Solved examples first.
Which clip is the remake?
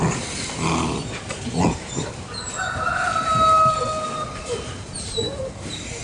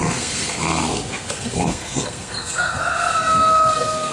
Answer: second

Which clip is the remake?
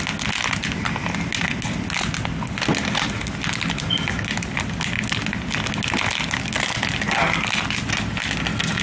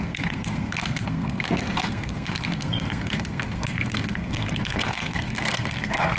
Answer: second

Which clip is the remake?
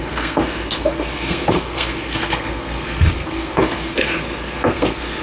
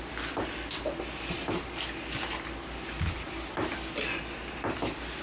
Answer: first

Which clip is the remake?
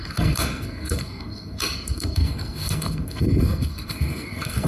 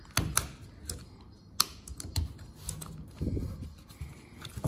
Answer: first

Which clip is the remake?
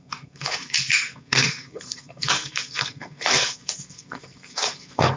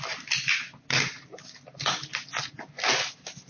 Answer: first